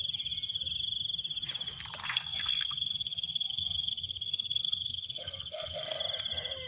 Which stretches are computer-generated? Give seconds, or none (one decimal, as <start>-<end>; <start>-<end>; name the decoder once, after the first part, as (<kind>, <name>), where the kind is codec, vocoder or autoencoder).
2.0-6.0 (codec, SNAC)